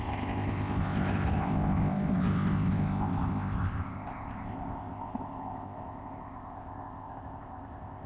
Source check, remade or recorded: remade